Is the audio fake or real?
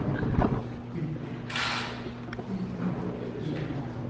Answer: real